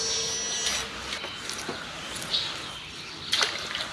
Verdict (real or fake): real